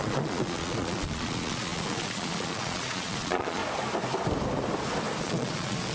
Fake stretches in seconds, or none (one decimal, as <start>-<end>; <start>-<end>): 0.0-3.6; 5.2-5.9